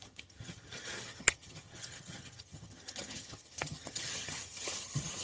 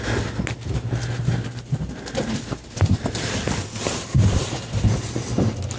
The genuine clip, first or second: second